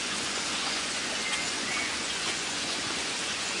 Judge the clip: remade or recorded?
remade